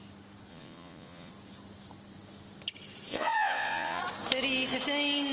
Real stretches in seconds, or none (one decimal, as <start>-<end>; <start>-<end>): 0.0-0.5; 1.3-3.1; 4.0-5.3

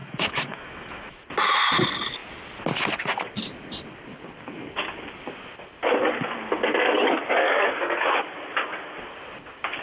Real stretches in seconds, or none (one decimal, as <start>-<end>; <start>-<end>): 1.2-9.8

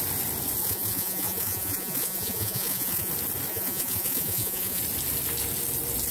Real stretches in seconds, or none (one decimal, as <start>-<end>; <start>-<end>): 0.0-0.6; 3.1-3.5; 4.8-6.1

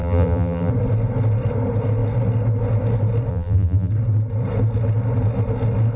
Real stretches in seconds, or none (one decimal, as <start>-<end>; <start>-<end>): 0.7-3.3; 3.9-6.0

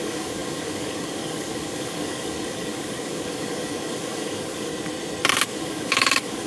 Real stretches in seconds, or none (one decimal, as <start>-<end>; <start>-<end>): 4.7-5.3